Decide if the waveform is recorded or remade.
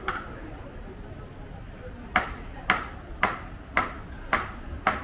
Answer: recorded